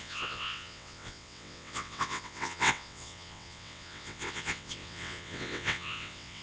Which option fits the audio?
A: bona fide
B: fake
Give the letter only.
B